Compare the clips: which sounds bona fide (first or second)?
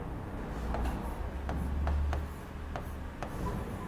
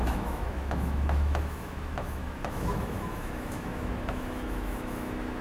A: first